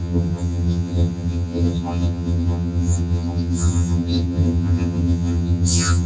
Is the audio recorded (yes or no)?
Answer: no